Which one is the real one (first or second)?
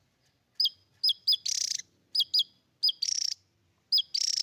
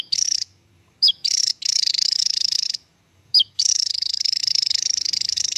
first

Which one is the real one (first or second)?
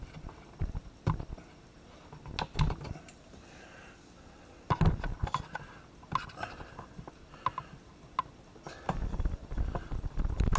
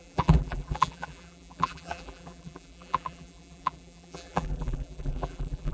first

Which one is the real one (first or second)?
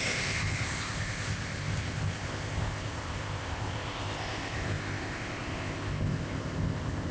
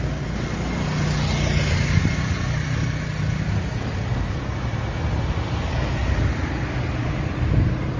second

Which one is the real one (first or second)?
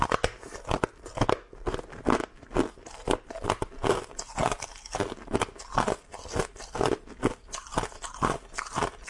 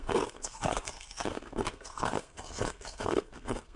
first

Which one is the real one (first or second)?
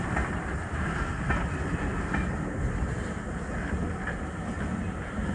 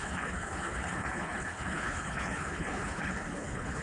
first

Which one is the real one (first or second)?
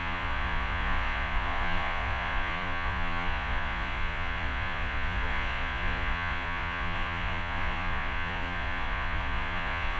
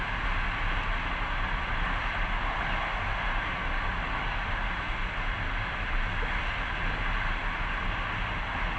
second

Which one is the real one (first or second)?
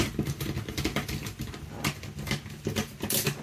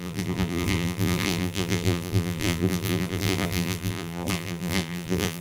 first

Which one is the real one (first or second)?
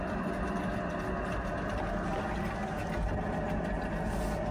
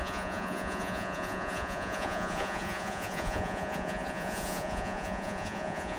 first